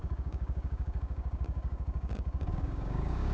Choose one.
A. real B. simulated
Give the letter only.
B